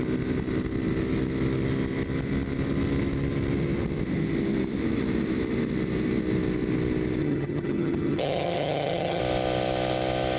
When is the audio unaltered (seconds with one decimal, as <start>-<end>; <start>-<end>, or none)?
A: 0.0-7.2; 9.2-10.4